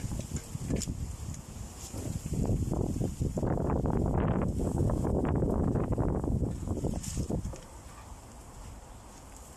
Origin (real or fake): real